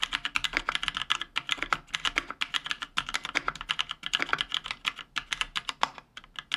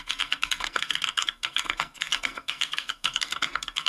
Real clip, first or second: first